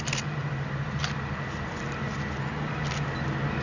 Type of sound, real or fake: real